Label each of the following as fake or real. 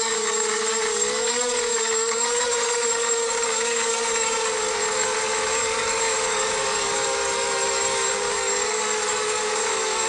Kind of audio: fake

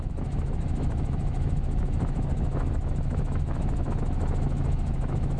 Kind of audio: fake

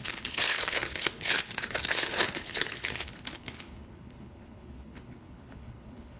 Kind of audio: fake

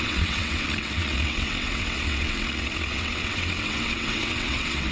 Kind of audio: fake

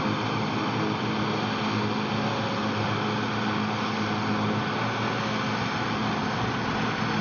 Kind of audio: real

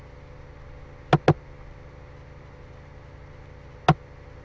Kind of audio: real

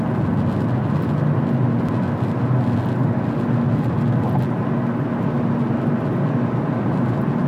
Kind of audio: real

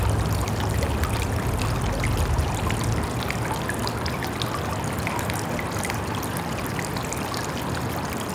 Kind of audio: real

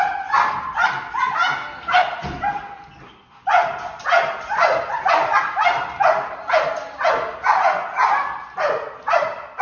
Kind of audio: real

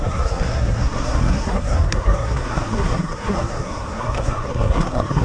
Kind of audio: fake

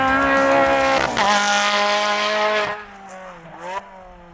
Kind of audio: real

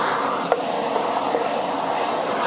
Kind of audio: real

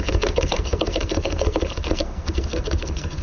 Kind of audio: fake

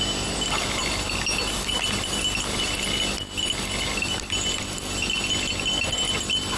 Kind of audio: real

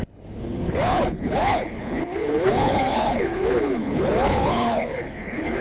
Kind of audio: fake